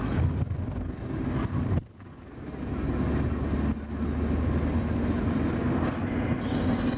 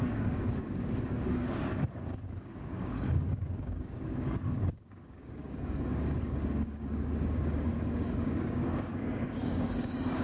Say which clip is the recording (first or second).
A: first